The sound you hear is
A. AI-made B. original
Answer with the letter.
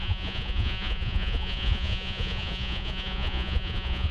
A